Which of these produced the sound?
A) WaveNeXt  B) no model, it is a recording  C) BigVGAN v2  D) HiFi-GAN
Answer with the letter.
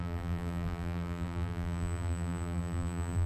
C